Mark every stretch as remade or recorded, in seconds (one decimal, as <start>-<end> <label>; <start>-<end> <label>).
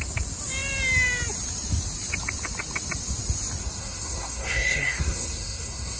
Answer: 0.0-3.6 recorded; 3.6-6.0 remade